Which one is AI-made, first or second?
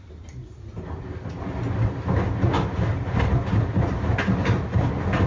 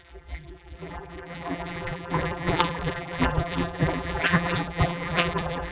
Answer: second